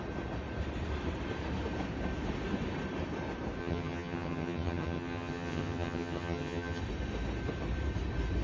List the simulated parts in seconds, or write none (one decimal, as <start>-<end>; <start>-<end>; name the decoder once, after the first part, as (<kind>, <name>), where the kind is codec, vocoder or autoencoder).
3.6-6.8 (vocoder, HiFi-GAN)